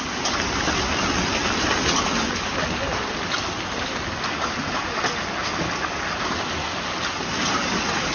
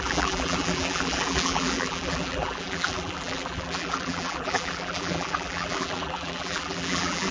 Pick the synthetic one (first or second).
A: second